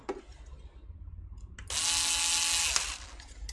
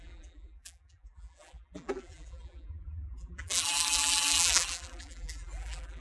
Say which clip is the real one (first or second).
first